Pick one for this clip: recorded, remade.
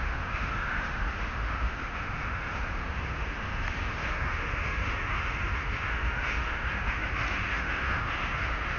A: remade